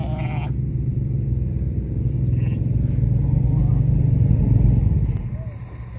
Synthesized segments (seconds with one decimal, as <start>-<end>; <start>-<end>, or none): none